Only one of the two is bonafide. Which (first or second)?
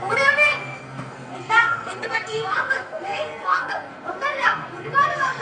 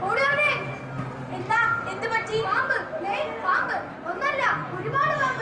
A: second